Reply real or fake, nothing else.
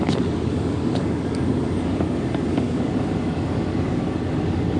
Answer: fake